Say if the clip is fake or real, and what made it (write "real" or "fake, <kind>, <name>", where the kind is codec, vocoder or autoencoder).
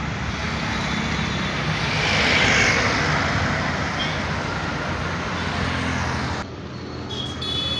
real